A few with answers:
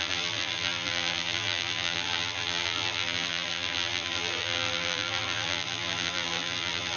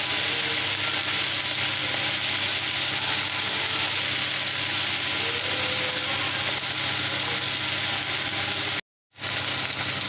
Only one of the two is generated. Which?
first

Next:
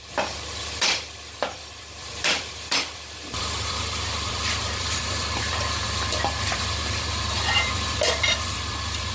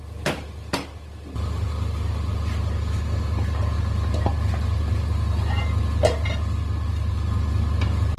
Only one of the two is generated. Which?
first